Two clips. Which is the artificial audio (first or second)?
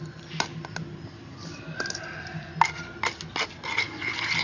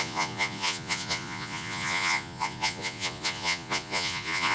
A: second